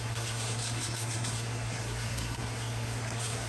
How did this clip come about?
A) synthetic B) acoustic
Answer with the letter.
A